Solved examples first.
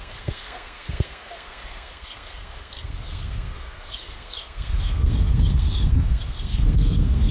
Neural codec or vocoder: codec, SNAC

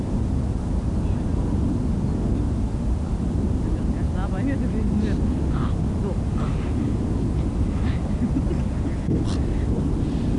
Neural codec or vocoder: none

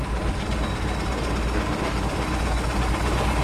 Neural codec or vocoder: none